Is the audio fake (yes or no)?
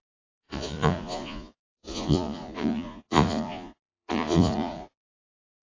yes